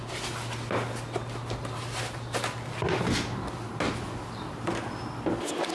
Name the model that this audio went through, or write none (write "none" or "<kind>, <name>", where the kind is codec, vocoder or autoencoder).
none